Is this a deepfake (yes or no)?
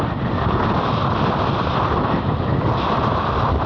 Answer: no